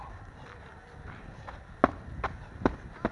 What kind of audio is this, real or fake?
real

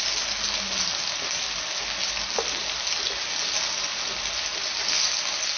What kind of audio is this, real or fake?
real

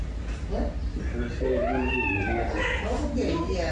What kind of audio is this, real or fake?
real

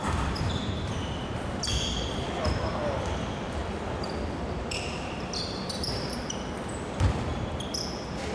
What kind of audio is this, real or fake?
fake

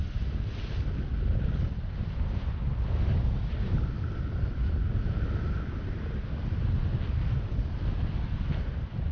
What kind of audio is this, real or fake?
real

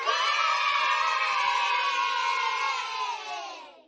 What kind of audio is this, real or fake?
fake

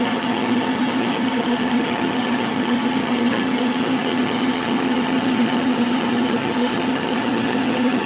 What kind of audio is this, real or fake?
fake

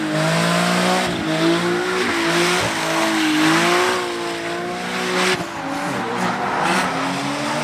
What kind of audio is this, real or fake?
real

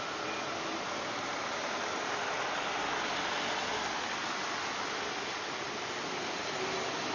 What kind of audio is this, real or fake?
real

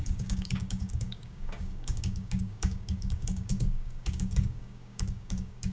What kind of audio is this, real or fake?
fake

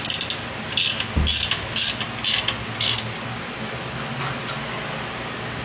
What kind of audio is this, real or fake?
real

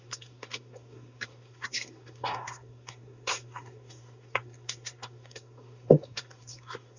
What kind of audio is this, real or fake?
fake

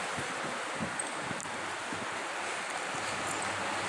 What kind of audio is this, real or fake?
real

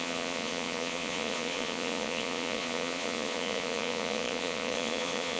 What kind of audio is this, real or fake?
fake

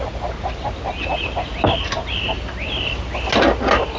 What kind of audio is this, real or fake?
real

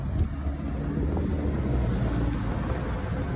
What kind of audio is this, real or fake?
real